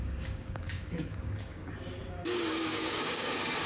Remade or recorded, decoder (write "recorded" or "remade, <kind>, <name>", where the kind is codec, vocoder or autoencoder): remade, codec, DAC